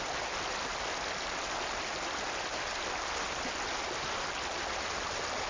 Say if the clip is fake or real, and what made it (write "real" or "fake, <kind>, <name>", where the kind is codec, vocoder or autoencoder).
real